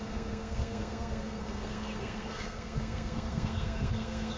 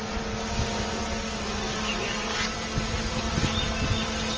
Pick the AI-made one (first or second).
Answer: first